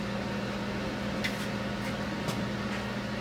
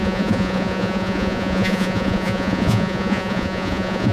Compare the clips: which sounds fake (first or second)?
second